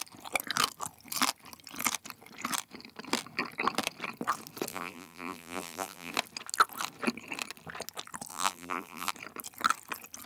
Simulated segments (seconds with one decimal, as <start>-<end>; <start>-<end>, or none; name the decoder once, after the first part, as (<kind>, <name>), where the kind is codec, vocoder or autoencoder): 4.7-6.1 (vocoder, BigVGAN v2); 8.3-9.1